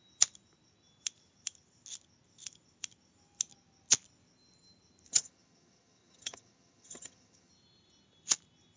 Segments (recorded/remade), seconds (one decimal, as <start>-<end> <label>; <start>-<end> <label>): 0.0-5.1 recorded; 5.1-7.5 remade; 7.5-8.8 recorded